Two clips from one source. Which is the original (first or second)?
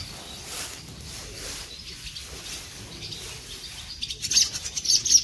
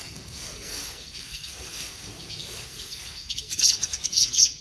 first